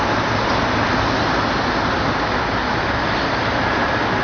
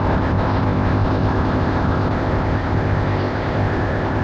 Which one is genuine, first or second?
first